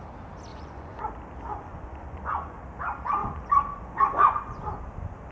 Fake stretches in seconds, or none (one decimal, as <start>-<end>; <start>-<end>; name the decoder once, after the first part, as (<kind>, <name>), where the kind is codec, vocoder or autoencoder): 0.5-1.1 (vocoder, Vocos); 1.5-2.6; 3.2-4.8